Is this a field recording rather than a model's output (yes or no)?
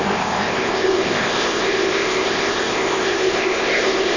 no